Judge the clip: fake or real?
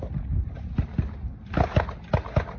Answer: real